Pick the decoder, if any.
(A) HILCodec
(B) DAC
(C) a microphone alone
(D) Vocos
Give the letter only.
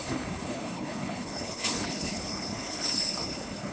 A